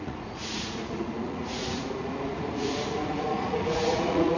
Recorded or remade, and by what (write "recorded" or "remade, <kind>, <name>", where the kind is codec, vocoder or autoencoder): remade, vocoder, Vocos